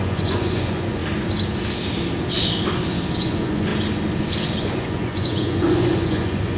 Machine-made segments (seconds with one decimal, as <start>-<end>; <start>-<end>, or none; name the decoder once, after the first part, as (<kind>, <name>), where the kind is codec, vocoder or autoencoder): 0.0-1.0 (vocoder, Vocos); 3.2-3.7; 4.6-6.6